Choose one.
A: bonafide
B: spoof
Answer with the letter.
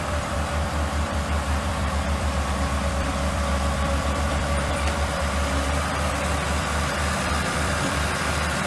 B